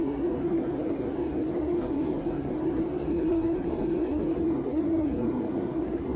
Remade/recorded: remade